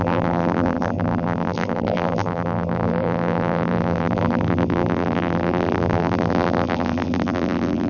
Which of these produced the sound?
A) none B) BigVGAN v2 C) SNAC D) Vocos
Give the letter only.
B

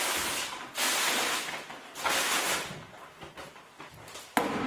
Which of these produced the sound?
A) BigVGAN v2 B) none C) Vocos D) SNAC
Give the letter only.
B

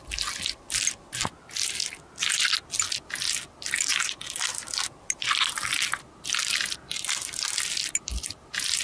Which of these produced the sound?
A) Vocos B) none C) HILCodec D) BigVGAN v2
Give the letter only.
B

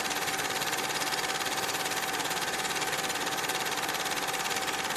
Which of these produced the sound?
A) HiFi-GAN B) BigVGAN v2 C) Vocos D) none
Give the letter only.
B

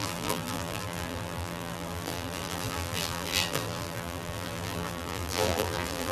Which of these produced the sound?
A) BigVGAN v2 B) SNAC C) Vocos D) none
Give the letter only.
A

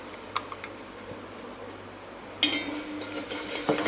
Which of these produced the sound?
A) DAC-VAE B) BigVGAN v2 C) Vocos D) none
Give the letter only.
D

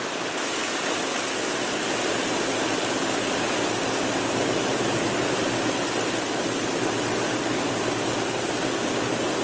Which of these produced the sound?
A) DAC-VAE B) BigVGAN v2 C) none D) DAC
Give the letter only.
C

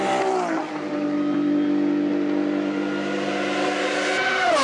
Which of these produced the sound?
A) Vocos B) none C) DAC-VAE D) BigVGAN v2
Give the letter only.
B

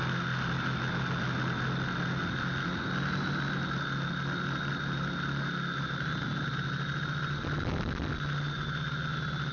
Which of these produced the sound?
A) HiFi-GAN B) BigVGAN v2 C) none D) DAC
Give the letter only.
C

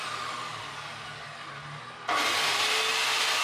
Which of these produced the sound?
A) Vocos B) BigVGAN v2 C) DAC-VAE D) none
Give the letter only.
D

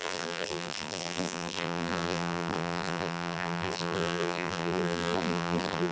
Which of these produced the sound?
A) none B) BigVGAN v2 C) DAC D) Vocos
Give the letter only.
B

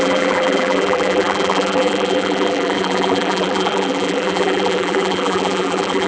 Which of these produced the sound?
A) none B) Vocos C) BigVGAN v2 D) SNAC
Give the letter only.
C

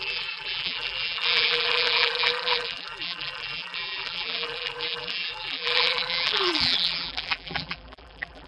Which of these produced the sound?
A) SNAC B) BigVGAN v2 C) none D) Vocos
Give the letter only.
B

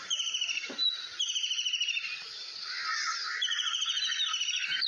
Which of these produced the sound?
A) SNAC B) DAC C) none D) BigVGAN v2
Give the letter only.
D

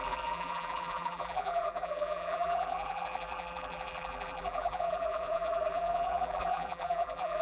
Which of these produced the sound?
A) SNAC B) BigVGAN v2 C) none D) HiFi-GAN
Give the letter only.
B